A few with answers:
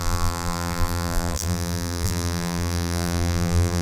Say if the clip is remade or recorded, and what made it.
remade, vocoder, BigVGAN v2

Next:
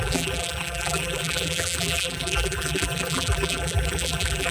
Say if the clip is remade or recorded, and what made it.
remade, vocoder, BigVGAN v2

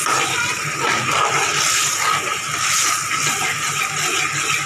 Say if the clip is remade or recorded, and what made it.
recorded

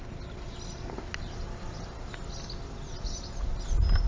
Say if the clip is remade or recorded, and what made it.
recorded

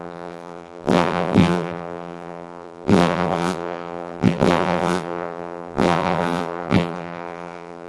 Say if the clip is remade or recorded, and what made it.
remade, vocoder, BigVGAN v2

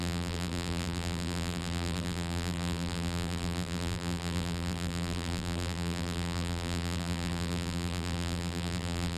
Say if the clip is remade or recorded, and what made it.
remade, vocoder, BigVGAN v2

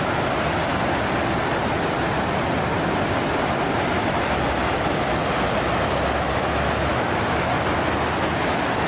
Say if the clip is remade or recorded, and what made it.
recorded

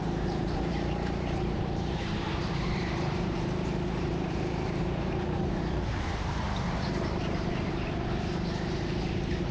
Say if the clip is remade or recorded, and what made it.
remade, vocoder, BigVGAN v2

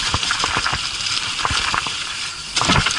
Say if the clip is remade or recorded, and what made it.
remade, vocoder, BigVGAN v2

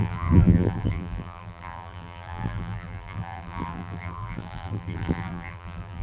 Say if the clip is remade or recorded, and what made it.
remade, vocoder, BigVGAN v2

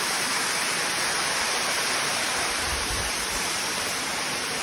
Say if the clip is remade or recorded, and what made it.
remade, vocoder, BigVGAN v2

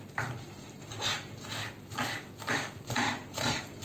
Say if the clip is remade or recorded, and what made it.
recorded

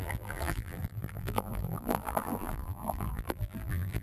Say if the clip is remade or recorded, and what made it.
remade, vocoder, BigVGAN v2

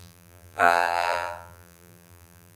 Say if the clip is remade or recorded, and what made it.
remade, vocoder, BigVGAN v2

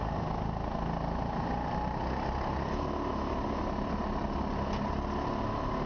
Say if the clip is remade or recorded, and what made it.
recorded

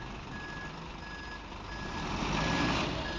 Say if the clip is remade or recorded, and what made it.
recorded